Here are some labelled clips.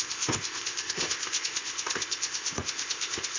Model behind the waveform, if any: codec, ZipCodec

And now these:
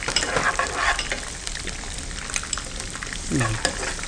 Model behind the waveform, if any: none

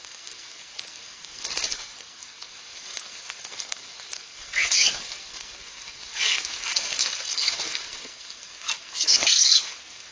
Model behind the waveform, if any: codec, SNAC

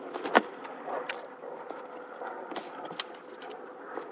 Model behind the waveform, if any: none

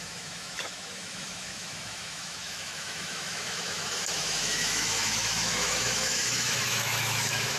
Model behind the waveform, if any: autoencoder, DAC-VAE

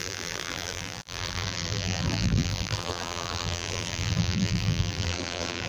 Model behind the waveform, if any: vocoder, BigVGAN v2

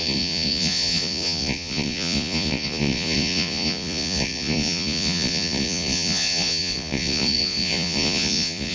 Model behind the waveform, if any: vocoder, Vocos